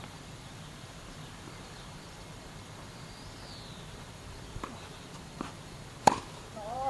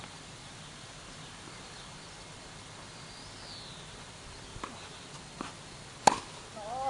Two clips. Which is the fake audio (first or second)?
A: first